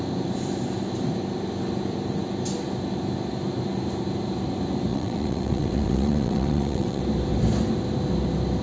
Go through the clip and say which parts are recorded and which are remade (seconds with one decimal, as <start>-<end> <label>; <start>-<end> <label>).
0.0-4.9 recorded; 4.9-7.0 remade; 7.0-8.6 recorded